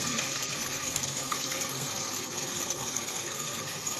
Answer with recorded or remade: remade